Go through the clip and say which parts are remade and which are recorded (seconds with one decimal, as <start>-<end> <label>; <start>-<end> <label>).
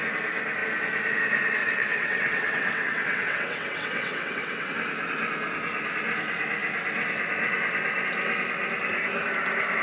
0.0-1.6 recorded; 1.6-4.7 remade; 4.7-9.8 recorded